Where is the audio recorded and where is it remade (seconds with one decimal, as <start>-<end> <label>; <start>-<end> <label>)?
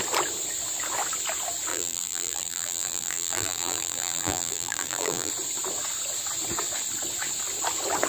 0.0-1.7 recorded; 1.7-5.3 remade; 5.3-8.1 recorded